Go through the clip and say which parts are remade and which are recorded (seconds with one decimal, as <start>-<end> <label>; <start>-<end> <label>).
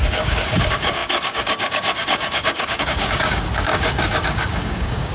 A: 0.0-5.1 remade